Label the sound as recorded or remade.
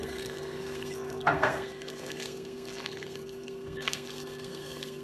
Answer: remade